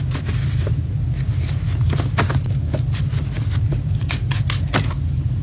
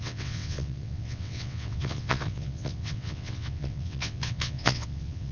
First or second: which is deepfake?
second